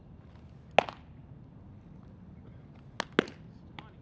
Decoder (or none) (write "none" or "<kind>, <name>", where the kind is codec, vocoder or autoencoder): none